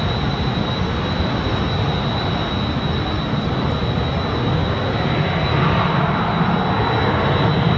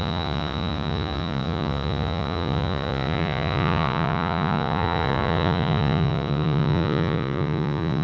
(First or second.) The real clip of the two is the first